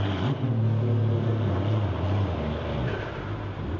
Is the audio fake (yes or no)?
no